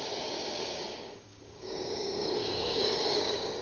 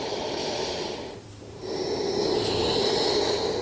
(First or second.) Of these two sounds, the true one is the second